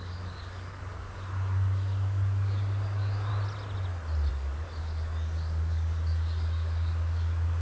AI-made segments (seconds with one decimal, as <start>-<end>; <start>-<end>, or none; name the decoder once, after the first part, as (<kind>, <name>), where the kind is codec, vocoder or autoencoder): 0.0-3.3 (codec, DAC); 4.3-7.6